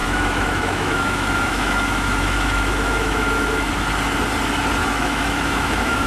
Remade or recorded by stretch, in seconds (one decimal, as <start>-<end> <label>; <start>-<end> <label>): 0.0-3.7 remade; 3.7-4.8 recorded; 4.8-6.1 remade